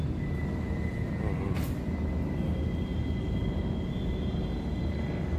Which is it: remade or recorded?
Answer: recorded